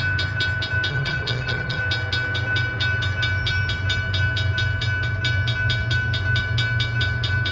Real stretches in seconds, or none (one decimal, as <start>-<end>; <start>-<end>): 0.0-0.9; 1.8-7.5